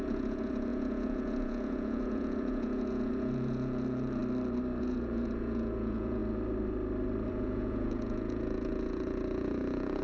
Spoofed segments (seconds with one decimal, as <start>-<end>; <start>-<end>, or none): 0.0-4.2; 4.8-6.2; 7.3-10.0